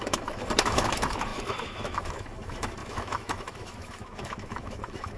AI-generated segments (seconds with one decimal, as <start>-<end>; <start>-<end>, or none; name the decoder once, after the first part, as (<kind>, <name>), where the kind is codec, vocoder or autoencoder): 0.0-5.2 (autoencoder, DAC-VAE)